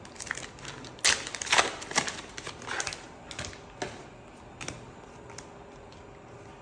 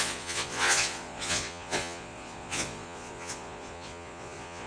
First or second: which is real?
first